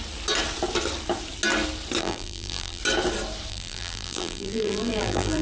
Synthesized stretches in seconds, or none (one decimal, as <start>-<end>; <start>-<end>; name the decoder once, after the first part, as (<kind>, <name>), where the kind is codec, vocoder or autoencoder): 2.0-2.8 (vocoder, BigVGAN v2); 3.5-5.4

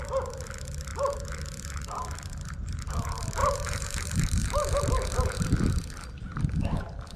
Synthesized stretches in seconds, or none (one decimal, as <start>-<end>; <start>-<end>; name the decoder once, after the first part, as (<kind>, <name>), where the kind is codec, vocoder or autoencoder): 3.4-4.8 (vocoder, BigVGAN v2)

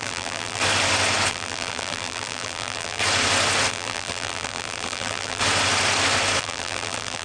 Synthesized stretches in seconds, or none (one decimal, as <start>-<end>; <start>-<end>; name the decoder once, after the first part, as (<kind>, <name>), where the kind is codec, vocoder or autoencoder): 0.0-0.6 (vocoder, BigVGAN v2); 1.3-3.0; 3.7-5.4; 6.4-7.2

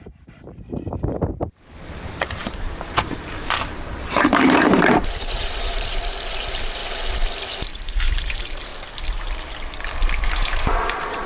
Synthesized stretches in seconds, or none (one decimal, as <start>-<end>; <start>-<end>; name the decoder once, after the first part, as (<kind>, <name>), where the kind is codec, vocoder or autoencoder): 0.0-6.8 (vocoder, BigVGAN v2); 7.7-8.7; 10.3-11.3